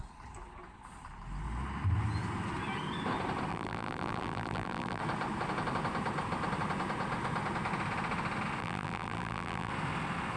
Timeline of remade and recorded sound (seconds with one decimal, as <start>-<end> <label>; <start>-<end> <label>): 0.0-3.5 recorded; 3.5-5.0 remade; 5.0-8.6 recorded; 8.6-9.7 remade; 9.7-10.4 recorded

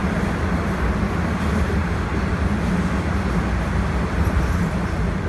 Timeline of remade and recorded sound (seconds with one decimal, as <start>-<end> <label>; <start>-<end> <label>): 0.0-5.3 recorded

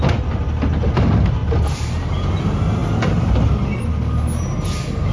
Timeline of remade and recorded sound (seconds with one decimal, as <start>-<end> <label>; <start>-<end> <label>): 0.0-5.1 recorded

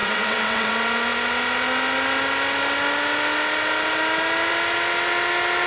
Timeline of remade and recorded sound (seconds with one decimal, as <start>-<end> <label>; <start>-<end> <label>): 0.0-0.7 remade; 0.7-5.7 recorded

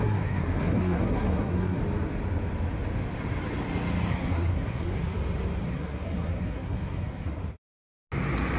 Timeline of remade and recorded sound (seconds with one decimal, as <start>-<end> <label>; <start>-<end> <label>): 0.0-1.8 remade; 1.8-4.1 recorded; 4.1-5.0 remade; 5.0-5.6 recorded; 5.6-7.4 remade; 7.4-8.6 recorded

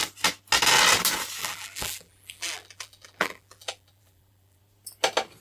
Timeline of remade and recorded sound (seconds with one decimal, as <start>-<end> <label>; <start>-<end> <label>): 0.0-1.4 recorded; 1.4-4.6 remade; 4.6-5.4 recorded